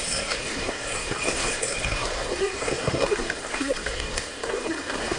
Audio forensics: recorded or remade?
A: remade